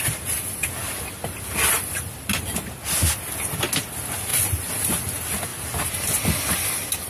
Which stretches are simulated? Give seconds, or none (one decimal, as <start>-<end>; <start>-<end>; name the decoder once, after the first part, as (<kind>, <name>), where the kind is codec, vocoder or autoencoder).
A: 0.8-2.4 (vocoder, BigVGAN v2); 5.5-6.4